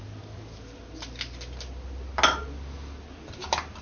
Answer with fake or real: real